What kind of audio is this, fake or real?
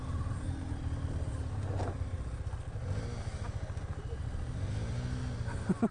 real